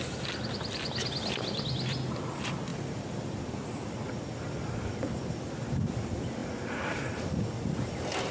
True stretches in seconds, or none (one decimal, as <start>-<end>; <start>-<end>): 0.0-8.3